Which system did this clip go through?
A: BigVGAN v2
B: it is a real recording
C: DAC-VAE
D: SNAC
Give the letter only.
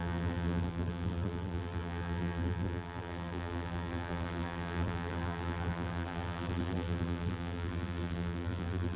A